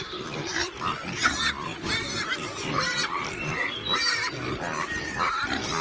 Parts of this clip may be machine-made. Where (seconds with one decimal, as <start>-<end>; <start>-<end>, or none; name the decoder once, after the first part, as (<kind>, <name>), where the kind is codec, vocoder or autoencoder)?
none